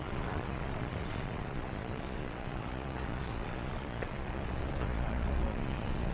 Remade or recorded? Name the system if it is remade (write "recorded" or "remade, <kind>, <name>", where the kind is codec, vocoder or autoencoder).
remade, vocoder, Vocos